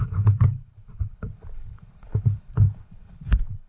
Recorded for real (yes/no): no